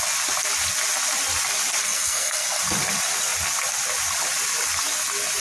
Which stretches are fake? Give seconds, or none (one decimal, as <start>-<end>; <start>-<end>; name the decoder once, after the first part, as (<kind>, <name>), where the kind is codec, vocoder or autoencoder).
1.8-2.6 (codec, SNAC)